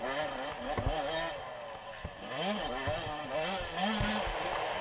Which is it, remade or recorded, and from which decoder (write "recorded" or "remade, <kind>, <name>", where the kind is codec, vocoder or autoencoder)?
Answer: recorded